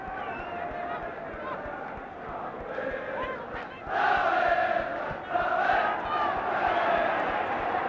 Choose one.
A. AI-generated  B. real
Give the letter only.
B